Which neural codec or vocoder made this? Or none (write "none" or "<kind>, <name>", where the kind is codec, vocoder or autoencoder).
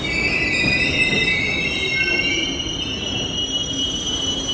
none